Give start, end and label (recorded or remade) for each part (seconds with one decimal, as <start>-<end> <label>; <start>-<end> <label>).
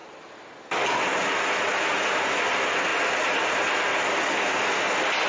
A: 0.0-5.3 recorded